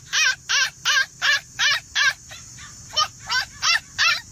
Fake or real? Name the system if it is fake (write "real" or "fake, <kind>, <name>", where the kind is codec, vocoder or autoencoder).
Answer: real